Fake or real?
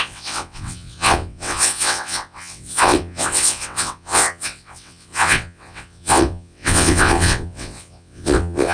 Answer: fake